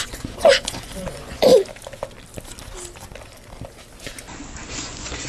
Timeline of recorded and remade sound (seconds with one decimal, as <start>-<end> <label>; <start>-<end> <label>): 0.0-1.5 remade; 1.5-4.7 recorded; 4.7-5.3 remade